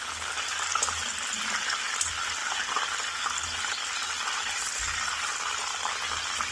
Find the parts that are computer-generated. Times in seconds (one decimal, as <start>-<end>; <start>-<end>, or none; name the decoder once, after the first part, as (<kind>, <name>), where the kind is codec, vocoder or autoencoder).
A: none